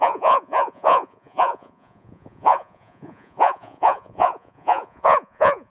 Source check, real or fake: fake